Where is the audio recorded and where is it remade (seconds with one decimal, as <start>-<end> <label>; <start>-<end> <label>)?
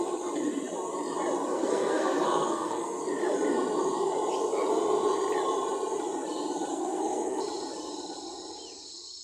0.0-1.5 recorded; 1.5-3.0 remade; 3.0-6.7 recorded; 6.7-7.4 remade; 7.4-9.2 recorded